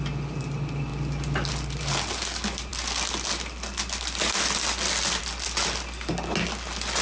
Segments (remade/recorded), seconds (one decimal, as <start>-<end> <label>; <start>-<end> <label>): 0.0-7.0 recorded